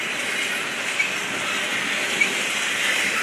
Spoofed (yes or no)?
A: no